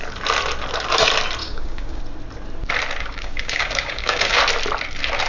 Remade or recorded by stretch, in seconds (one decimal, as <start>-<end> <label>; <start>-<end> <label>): 0.0-1.4 recorded; 1.4-2.0 remade; 2.0-3.0 recorded; 3.0-4.4 remade; 4.4-5.3 recorded